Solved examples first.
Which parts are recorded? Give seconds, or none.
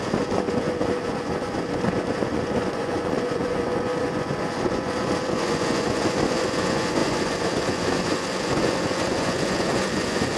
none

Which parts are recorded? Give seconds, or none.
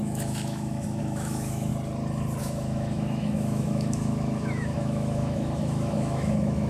1.7-2.4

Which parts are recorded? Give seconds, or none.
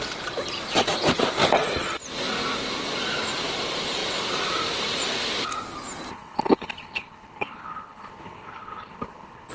0.0-6.1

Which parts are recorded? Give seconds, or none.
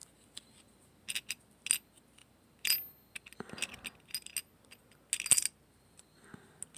0.0-6.8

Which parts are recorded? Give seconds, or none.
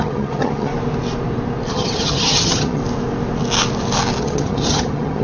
0.7-1.7; 2.8-4.2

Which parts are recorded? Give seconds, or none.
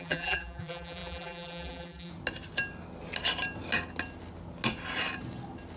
2.1-5.8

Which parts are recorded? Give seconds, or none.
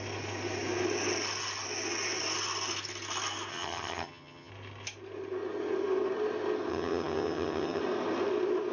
0.0-3.5; 4.5-6.7; 7.8-8.7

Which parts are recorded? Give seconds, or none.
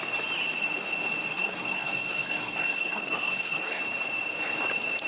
0.0-1.3; 3.8-5.1